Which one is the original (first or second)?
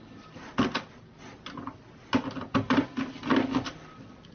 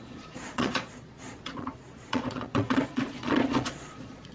first